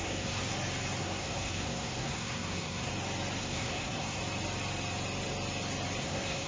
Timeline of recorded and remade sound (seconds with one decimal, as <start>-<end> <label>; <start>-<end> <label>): 0.0-0.4 remade; 0.4-1.0 recorded; 1.0-2.9 remade; 2.9-3.4 recorded; 3.4-4.2 remade; 4.2-6.0 recorded; 6.0-6.5 remade